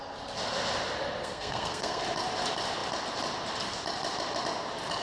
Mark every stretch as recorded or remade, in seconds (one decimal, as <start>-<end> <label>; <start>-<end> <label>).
0.0-1.2 recorded; 1.2-2.0 remade; 2.0-5.0 recorded